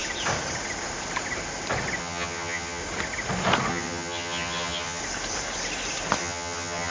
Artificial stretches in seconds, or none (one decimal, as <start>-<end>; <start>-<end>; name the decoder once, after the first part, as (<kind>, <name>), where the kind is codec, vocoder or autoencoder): 2.0-2.8 (vocoder, HiFi-GAN); 3.7-5.0; 6.2-6.9